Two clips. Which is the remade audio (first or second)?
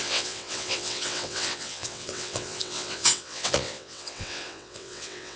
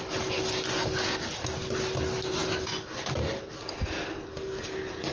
first